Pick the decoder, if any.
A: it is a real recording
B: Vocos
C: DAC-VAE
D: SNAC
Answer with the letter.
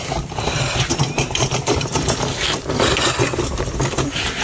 A